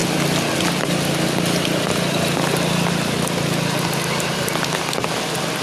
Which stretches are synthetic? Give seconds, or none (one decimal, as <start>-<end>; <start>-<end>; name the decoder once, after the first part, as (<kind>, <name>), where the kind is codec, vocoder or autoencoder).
none